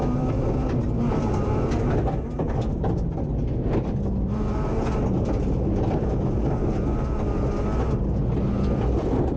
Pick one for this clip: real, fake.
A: real